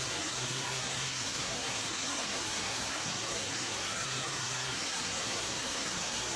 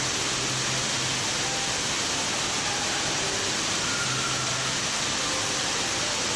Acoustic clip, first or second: second